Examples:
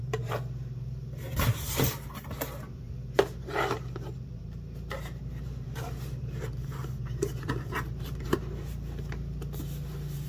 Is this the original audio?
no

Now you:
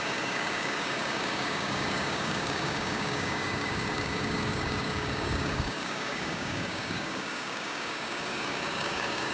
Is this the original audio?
no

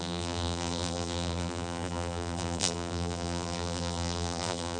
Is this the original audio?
no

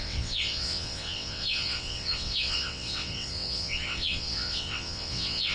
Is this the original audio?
no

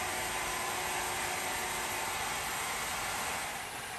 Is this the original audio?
yes